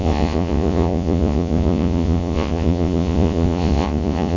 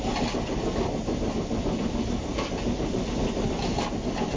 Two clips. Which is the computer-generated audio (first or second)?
first